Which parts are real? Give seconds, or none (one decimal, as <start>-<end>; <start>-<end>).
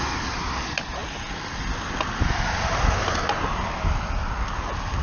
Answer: 0.0-5.0